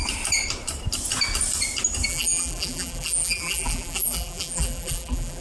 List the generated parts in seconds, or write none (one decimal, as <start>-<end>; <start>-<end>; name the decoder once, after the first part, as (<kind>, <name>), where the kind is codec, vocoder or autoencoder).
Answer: 2.1-5.4 (vocoder, BigVGAN v2)